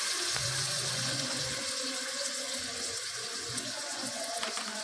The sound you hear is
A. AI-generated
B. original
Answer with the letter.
A